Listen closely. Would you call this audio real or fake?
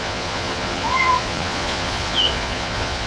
fake